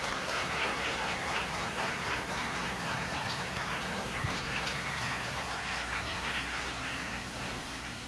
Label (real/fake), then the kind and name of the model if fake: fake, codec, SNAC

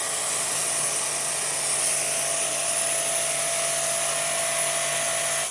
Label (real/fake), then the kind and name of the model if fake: real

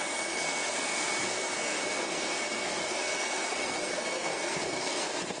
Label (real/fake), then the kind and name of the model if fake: fake, codec, SNAC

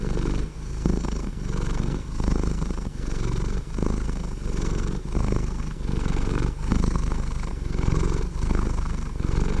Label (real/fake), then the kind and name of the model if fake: fake, codec, SNAC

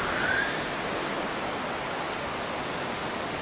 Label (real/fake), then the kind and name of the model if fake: real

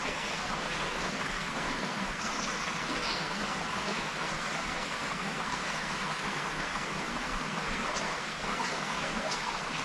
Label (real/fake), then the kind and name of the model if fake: fake, codec, SNAC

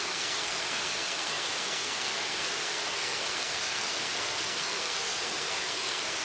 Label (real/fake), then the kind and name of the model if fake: fake, codec, SNAC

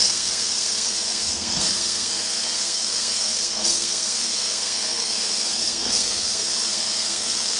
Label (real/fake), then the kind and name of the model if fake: fake, codec, SNAC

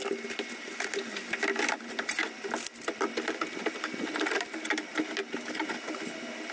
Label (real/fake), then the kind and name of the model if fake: real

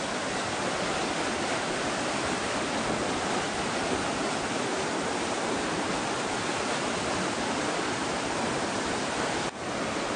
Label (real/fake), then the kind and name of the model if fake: real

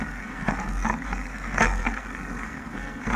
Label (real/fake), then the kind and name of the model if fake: fake, codec, SNAC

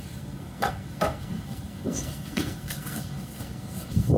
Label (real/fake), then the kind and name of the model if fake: fake, codec, SNAC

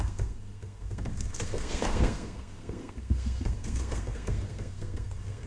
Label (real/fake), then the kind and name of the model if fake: fake, codec, SNAC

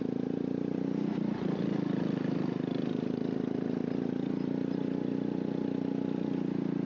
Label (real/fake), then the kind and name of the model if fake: real